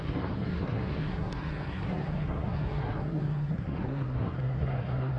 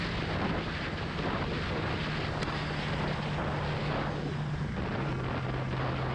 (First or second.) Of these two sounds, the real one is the second